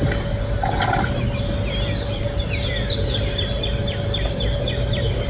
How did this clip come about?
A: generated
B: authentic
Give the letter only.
B